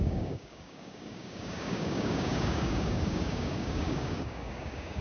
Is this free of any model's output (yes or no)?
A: no